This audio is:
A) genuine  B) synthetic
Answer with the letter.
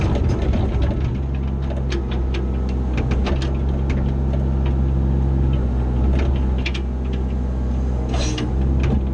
A